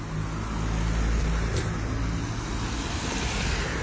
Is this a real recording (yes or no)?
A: yes